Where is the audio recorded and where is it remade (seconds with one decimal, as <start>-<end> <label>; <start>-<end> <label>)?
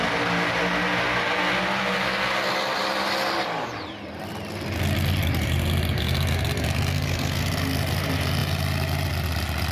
0.0-6.9 recorded; 6.9-7.4 remade; 7.4-9.7 recorded